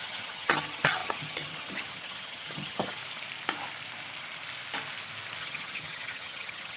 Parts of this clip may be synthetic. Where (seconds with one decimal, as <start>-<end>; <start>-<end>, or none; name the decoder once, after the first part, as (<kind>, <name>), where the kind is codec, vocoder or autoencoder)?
0.0-3.0 (vocoder, HiFi-GAN); 5.4-6.8